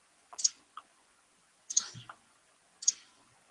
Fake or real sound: fake